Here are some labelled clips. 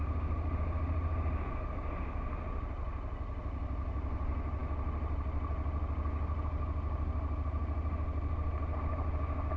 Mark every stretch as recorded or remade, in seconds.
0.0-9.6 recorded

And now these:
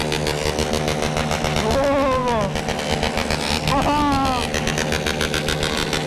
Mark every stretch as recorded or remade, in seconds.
0.0-6.1 recorded

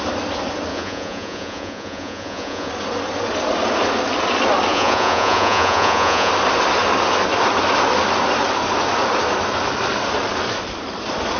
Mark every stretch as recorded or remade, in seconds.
0.0-0.7 recorded; 0.7-2.7 remade; 2.7-4.7 recorded; 4.7-6.3 remade; 6.3-11.4 recorded

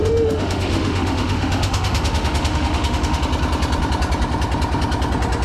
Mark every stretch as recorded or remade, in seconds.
0.0-3.2 remade; 3.2-5.4 recorded

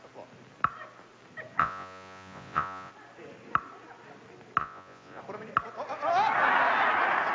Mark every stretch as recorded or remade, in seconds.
0.0-1.6 recorded; 1.6-2.9 remade; 2.9-4.6 recorded; 4.6-5.2 remade; 5.2-7.3 recorded

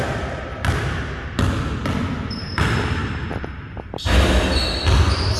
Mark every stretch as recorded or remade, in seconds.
0.0-5.4 recorded

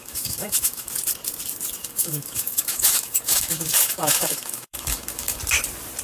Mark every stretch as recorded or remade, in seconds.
0.0-0.9 remade; 0.9-1.8 recorded; 1.8-5.4 remade; 5.4-6.0 recorded

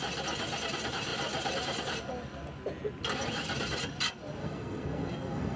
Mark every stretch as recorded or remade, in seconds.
0.0-4.4 recorded; 4.4-5.6 remade